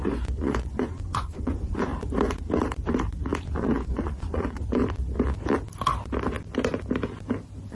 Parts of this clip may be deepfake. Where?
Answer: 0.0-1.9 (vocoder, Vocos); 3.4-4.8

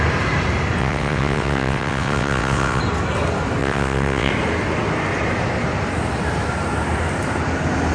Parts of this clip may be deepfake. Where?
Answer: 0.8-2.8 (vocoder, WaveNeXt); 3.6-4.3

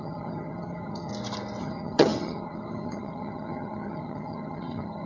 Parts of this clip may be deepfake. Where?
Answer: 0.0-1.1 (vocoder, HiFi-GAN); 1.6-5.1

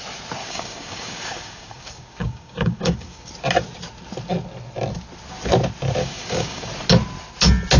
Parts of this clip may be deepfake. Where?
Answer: 0.4-3.3 (codec, DAC); 6.0-6.7

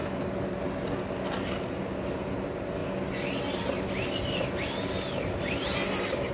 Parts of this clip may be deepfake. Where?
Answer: none

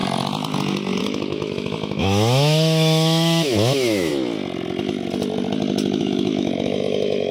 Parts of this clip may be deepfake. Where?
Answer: 1.0-4.1 (autoencoder, DAC-VAE); 6.0-7.3